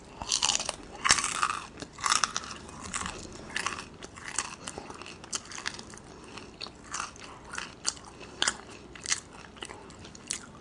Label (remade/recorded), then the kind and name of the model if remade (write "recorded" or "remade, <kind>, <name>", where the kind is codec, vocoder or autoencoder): remade, vocoder, BigVGAN v2